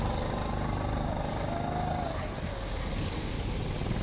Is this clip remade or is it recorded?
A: recorded